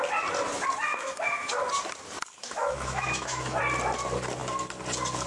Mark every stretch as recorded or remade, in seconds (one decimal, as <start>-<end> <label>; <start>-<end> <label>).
0.0-0.9 recorded; 0.9-1.6 remade; 1.6-2.4 recorded; 2.4-3.6 remade; 3.6-5.3 recorded